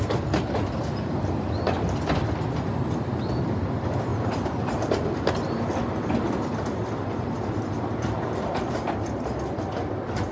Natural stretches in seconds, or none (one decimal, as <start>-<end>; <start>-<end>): 0.0-4.1; 5.3-10.3

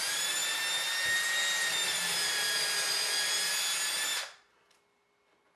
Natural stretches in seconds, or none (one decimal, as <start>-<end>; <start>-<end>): 0.0-5.6

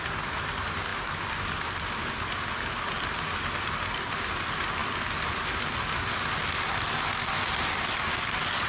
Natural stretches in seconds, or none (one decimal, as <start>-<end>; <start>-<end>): 0.0-8.7

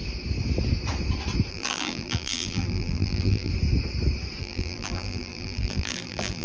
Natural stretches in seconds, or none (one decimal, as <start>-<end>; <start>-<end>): 0.0-1.5; 3.5-4.4

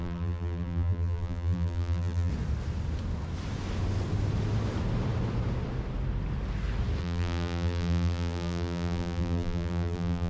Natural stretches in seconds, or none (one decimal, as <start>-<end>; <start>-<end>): 2.3-7.0